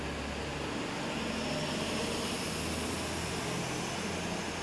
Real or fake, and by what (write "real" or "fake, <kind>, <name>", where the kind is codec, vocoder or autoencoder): real